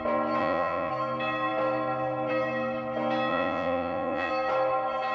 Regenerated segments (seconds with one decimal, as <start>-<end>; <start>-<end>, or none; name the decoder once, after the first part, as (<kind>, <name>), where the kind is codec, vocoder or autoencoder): 0.4-0.9 (vocoder, Vocos); 3.3-4.3